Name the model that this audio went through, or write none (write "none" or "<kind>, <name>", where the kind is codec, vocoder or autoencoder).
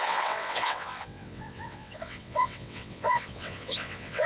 vocoder, WaveNeXt